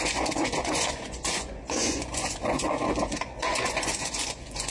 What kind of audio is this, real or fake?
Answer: fake